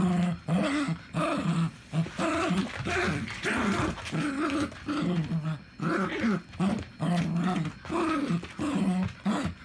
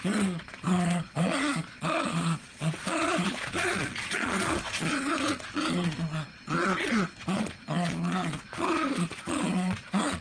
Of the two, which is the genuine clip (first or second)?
first